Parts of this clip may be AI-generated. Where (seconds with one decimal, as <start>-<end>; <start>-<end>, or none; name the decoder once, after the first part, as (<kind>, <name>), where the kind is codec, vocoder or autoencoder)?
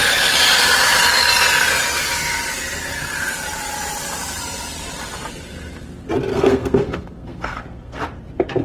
6.3-8.0 (codec, SNAC)